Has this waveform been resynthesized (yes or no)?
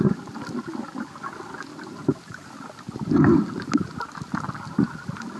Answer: no